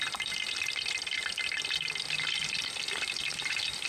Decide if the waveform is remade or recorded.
recorded